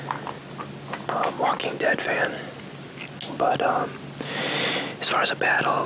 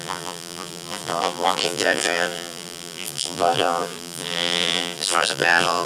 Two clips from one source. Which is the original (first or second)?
first